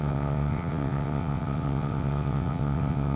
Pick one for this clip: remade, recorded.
remade